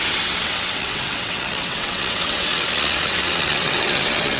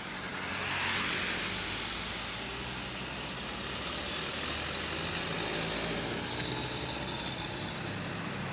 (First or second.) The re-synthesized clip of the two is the first